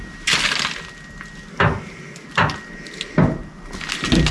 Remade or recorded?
recorded